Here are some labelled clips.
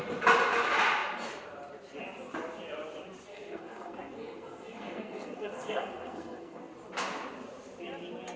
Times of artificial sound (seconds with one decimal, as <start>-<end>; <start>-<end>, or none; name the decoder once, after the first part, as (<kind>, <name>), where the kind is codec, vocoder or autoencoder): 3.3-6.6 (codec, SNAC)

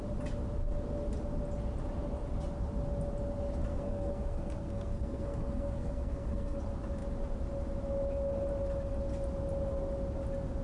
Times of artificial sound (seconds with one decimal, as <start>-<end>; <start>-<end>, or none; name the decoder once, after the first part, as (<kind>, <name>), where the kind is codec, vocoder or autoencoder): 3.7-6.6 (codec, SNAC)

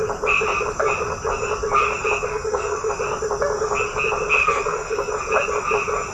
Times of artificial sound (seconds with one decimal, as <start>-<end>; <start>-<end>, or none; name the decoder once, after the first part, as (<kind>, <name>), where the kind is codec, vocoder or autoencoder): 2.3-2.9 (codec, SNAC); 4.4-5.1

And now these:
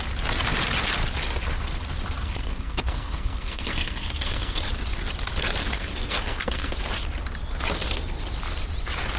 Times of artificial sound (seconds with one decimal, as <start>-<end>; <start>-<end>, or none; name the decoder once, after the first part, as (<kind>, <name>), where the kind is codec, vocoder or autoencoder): 2.2-4.6 (codec, SNAC); 5.6-6.7

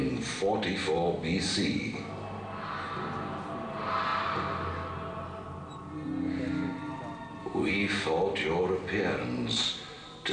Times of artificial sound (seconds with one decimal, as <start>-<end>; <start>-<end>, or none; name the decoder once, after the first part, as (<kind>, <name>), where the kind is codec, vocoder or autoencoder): none